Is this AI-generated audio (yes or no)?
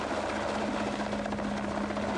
no